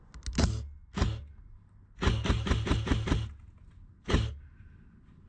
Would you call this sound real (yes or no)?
yes